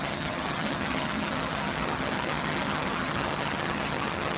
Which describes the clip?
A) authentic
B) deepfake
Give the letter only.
B